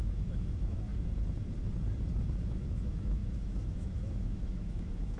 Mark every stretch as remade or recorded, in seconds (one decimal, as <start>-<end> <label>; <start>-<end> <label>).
0.0-0.9 remade; 0.9-2.4 recorded; 2.4-5.2 remade